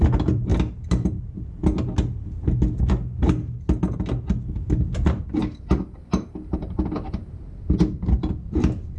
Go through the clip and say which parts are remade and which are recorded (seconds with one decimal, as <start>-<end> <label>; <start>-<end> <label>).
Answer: 0.0-0.5 remade; 0.5-1.2 recorded; 1.2-1.6 remade; 1.6-4.5 recorded; 4.5-9.0 remade